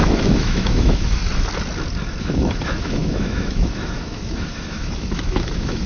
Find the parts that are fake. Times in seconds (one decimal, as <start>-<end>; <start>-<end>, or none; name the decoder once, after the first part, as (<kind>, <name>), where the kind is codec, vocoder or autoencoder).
0.0-1.2 (autoencoder, DAC-VAE); 2.2-5.9